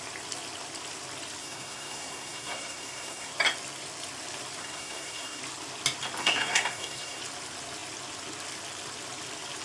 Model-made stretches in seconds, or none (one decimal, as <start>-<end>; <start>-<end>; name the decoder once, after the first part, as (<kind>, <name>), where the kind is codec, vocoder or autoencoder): 1.4-3.3 (codec, SNAC); 4.6-5.4; 6.2-7.2